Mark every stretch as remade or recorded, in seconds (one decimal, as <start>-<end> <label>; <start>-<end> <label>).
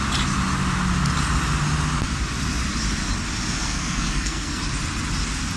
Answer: 0.0-3.6 recorded; 3.6-4.6 remade; 4.6-5.6 recorded